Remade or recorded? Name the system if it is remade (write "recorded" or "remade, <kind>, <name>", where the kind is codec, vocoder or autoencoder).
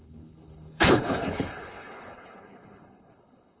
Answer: remade, codec, HILCodec